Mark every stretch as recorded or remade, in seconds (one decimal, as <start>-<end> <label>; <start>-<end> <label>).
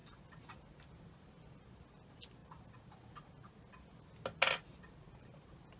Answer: 0.0-5.8 recorded